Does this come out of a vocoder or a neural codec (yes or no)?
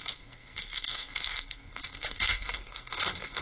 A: yes